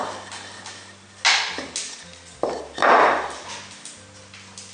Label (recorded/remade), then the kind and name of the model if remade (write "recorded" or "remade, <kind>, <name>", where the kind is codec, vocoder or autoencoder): recorded